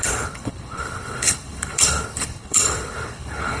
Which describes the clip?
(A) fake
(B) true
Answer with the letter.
A